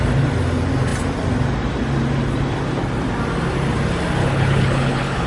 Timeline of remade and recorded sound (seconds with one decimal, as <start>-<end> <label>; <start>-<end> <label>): 0.0-4.2 recorded; 4.2-5.3 remade